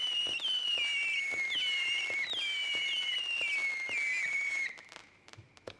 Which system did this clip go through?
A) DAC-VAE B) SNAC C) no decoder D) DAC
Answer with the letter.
C